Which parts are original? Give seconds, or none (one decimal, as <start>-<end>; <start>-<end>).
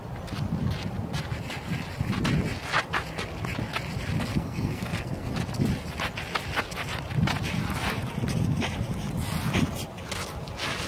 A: 0.0-4.3; 5.3-10.9